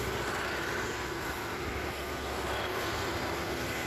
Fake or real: real